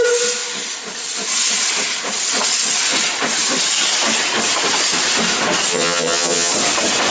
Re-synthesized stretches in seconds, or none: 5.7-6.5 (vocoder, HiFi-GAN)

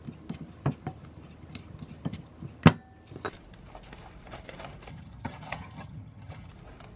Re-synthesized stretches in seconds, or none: 4.9-6.5 (vocoder, HiFi-GAN)

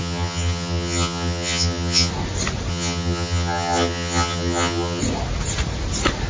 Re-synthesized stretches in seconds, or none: 0.0-2.1 (vocoder, HiFi-GAN); 2.7-5.0